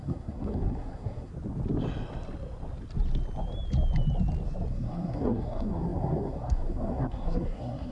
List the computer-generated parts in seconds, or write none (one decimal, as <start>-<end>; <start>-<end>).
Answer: 0.0-1.3; 4.7-7.9